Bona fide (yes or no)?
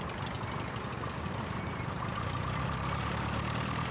yes